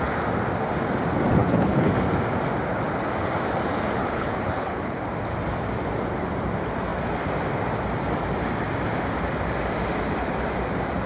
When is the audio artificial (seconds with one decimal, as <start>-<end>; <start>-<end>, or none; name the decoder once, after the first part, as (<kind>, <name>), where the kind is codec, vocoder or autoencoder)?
1.4-1.9 (codec, HILCodec); 4.0-5.0